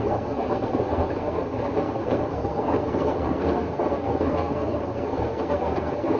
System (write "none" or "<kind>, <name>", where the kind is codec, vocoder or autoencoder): codec, SNAC